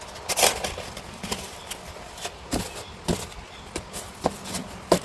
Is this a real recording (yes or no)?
yes